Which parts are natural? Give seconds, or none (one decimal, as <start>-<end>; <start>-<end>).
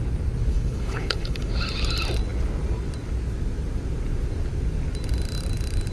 0.0-0.5; 1.5-5.9